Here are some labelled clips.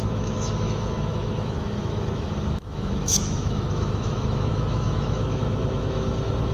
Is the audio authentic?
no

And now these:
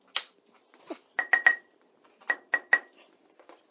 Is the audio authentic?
yes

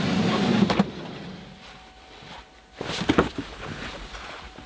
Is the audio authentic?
yes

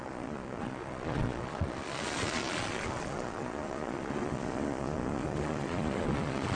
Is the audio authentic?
no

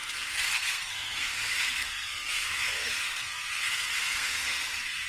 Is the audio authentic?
no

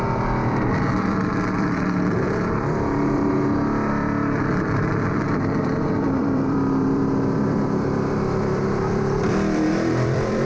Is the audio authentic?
no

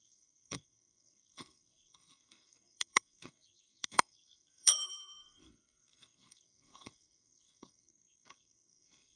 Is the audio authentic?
no